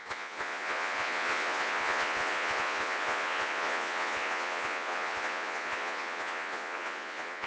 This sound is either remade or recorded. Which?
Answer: remade